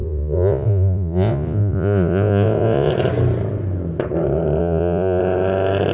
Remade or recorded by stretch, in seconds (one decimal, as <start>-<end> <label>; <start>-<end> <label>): 0.0-2.9 remade; 2.9-4.6 recorded; 4.6-5.2 remade; 5.2-5.9 recorded